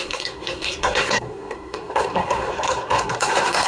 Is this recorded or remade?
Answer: remade